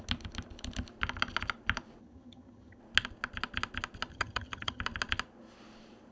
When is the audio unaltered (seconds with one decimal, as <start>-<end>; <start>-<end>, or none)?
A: 0.0-2.0; 2.8-4.1; 4.8-6.1